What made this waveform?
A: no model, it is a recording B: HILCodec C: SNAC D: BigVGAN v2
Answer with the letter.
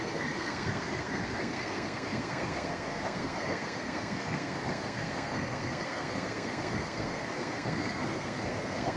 C